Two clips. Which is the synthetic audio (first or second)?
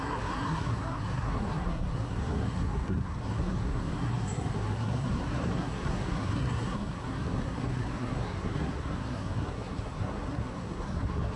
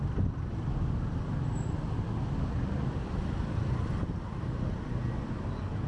first